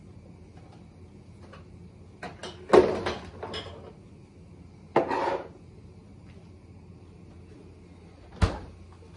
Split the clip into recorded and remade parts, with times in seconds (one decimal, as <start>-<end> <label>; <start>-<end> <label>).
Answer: 0.0-9.2 recorded